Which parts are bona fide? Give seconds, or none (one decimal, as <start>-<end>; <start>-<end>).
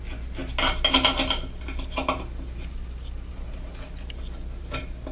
0.0-5.1